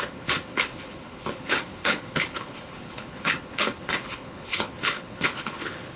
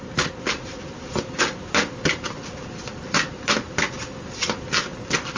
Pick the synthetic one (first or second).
first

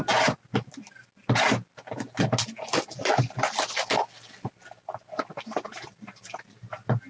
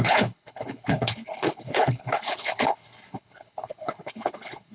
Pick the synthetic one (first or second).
second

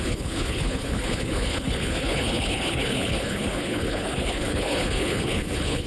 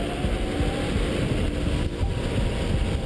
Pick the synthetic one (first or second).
first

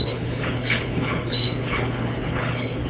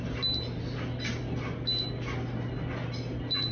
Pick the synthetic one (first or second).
first